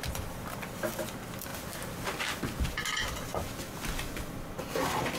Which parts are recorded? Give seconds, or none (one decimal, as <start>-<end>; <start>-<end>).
1.5-2.6